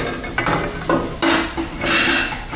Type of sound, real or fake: real